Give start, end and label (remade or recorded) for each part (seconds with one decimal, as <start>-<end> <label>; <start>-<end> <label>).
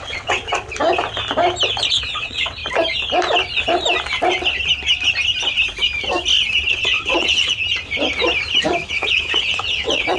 0.0-0.4 remade; 0.4-1.9 recorded; 1.9-2.6 remade; 2.6-6.7 recorded; 6.7-7.6 remade; 7.6-8.9 recorded; 8.9-10.2 remade